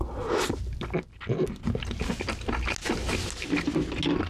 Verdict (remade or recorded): recorded